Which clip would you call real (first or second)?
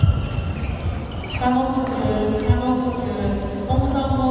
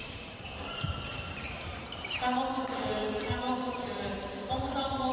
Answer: first